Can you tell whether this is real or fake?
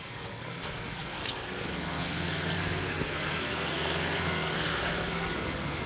fake